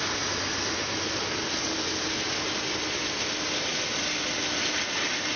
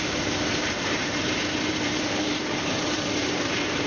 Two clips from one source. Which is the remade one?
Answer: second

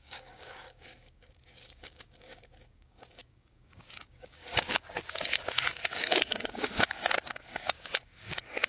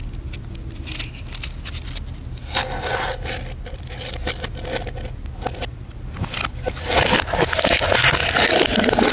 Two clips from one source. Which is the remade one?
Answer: first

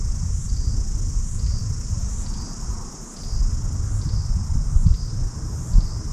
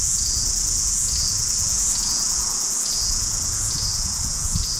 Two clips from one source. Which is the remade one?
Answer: second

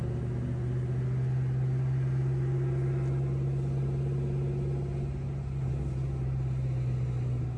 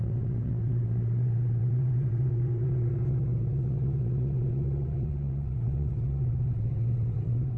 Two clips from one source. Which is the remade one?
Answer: second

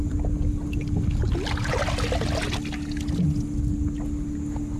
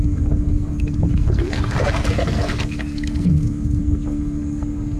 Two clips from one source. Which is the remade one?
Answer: second